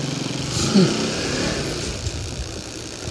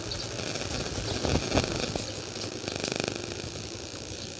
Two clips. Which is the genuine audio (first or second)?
second